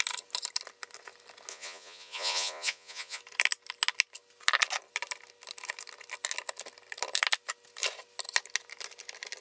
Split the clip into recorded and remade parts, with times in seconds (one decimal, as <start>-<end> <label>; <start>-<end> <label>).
0.0-1.5 recorded; 1.5-3.2 remade; 3.2-9.4 recorded